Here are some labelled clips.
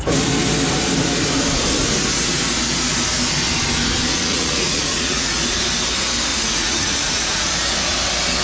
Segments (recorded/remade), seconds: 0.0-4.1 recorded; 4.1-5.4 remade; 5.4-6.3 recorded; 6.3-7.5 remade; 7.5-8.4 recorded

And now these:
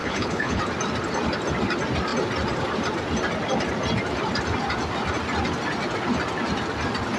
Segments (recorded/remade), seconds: 0.0-0.6 remade; 0.6-7.2 recorded

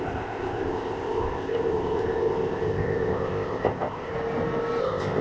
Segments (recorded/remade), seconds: 0.0-4.1 remade; 4.1-4.8 recorded; 4.8-5.2 remade

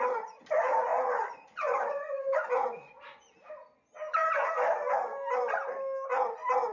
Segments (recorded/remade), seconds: 0.0-0.9 recorded; 0.9-3.0 remade; 3.0-6.7 recorded

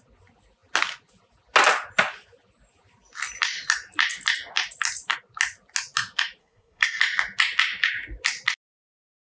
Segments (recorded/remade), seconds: 0.0-6.4 recorded; 6.4-7.0 remade; 7.0-9.4 recorded